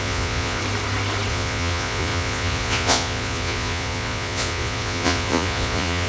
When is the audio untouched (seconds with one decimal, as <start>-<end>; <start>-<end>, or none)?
0.6-1.3